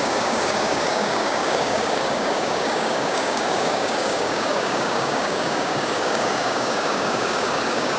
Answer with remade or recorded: remade